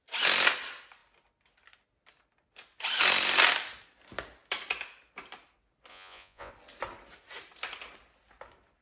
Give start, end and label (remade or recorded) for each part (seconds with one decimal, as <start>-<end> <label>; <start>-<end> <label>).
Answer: 0.0-5.9 recorded; 5.9-6.5 remade; 6.5-8.8 recorded